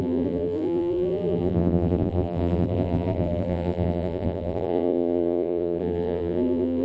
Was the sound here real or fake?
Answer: fake